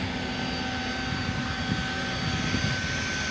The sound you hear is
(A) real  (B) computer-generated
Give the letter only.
A